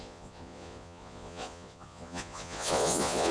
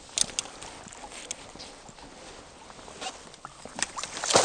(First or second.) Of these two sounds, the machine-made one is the first